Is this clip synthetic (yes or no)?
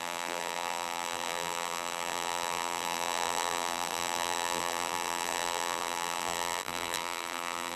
yes